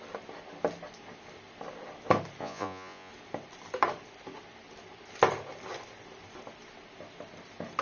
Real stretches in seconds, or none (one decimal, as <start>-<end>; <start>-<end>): 0.0-2.4; 3.1-7.8